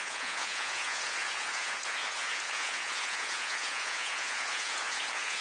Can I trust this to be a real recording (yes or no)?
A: no